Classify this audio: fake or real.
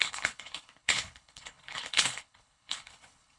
fake